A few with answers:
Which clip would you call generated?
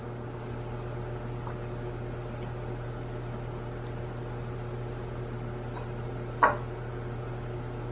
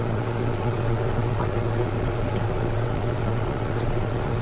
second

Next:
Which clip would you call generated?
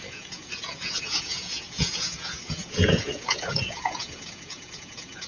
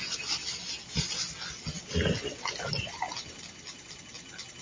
first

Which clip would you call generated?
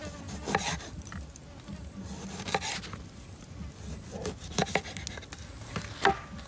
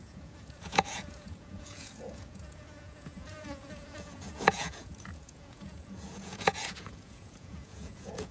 second